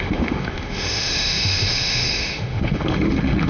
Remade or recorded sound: remade